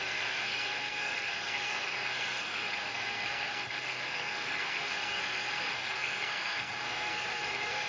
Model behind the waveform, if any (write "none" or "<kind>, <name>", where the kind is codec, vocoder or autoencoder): codec, SNAC